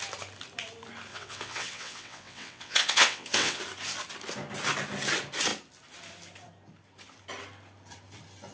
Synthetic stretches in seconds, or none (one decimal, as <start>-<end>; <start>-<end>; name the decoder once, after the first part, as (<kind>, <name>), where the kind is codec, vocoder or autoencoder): 1.1-3.6 (vocoder, WaveNeXt)